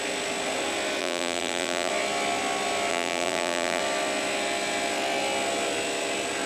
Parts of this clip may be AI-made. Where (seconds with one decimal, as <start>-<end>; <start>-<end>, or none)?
1.0-1.9; 2.9-3.8